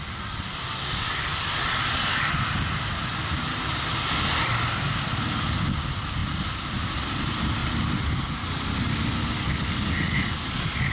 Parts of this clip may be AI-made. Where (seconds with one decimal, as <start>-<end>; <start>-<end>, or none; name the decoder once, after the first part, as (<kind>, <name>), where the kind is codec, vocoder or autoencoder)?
6.2-6.9 (vocoder, BigVGAN v2); 7.6-8.4